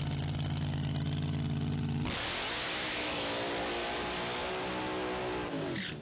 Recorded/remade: recorded